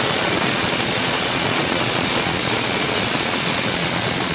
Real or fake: fake